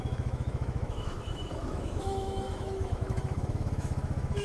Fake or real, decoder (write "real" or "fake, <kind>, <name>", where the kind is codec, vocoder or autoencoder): fake, autoencoder, DAC-VAE